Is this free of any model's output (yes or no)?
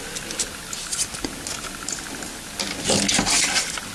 yes